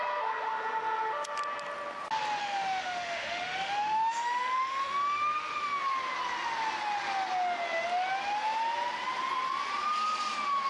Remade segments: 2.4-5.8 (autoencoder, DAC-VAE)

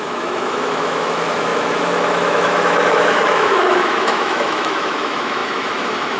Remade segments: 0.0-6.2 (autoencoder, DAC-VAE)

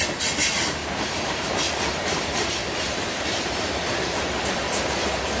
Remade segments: 0.8-1.6 (vocoder, BigVGAN v2); 2.6-4.2

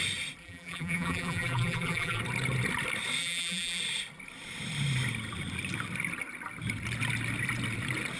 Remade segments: 0.4-2.2 (vocoder, BigVGAN v2); 3.2-3.8

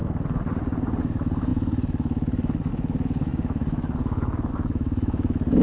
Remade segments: 1.0-5.6 (autoencoder, DAC-VAE)